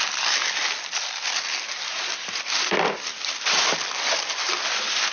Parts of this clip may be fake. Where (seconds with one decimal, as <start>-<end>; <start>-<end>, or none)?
none